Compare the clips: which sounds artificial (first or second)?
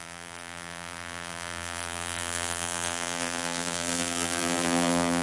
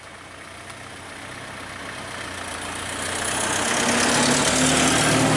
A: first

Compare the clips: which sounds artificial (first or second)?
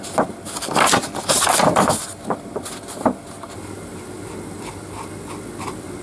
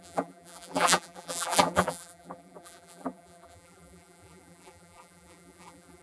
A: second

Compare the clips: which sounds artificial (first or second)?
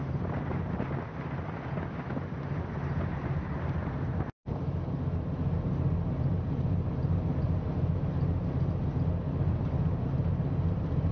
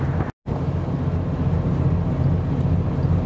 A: first